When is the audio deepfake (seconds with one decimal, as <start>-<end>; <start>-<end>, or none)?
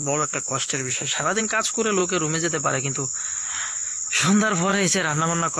0.0-1.4; 4.7-5.6